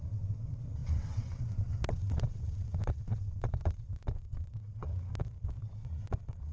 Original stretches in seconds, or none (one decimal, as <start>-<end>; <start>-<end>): 4.9-5.6